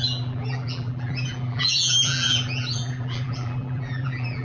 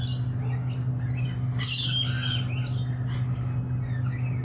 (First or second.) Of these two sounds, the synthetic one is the first